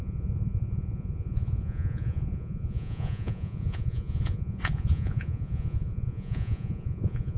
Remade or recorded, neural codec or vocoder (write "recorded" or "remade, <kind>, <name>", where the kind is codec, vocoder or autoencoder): remade, vocoder, Vocos